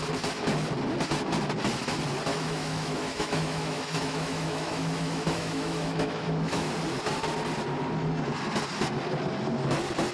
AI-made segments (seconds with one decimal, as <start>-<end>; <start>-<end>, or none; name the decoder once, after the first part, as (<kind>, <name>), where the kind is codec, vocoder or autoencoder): 2.3-6.7 (autoencoder, DAC-VAE)